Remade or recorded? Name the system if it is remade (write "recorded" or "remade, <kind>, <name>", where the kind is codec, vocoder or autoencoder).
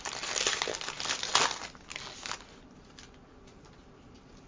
recorded